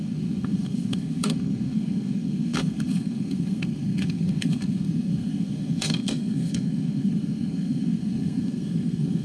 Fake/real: fake